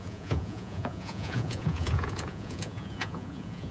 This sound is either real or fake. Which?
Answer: fake